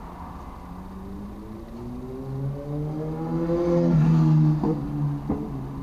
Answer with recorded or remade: recorded